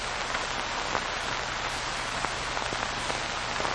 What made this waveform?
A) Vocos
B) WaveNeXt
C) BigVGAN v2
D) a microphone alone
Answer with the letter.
D